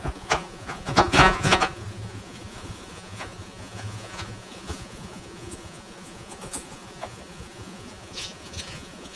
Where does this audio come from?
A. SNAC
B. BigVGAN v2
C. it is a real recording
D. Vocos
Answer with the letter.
D